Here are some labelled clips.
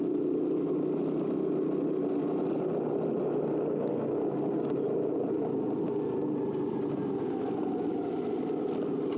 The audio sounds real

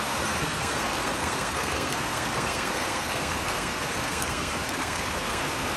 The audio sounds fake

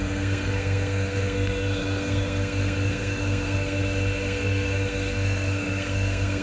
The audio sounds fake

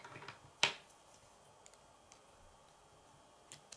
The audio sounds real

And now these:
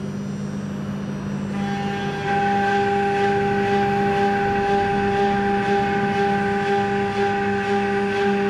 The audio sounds real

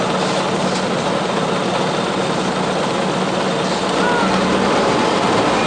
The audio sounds real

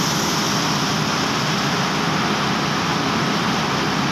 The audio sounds real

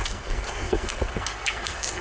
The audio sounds fake